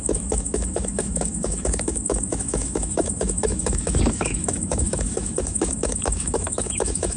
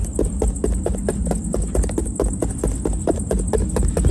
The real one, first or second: second